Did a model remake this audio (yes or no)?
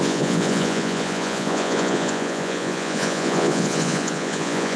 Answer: yes